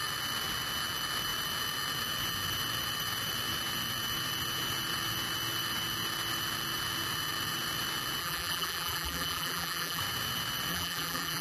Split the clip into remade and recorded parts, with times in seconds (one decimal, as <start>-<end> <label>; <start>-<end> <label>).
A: 0.0-8.2 recorded; 8.2-10.0 remade; 10.0-10.7 recorded; 10.7-11.4 remade